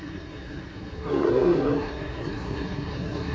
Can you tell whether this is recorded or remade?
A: remade